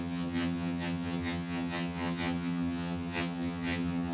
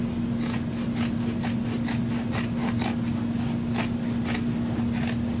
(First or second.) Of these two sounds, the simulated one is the first